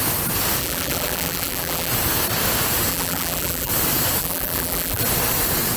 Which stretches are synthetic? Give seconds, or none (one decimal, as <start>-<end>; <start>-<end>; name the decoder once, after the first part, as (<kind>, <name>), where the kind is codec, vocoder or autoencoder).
0.6-1.9 (vocoder, BigVGAN v2); 2.9-3.7; 4.2-5.0